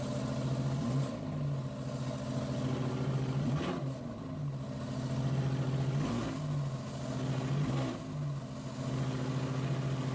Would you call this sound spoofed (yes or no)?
no